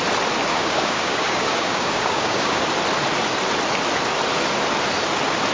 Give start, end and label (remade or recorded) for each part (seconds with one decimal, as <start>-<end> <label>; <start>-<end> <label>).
0.0-0.5 recorded; 0.5-2.6 remade; 2.6-5.5 recorded